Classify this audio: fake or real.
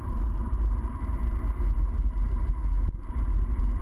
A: fake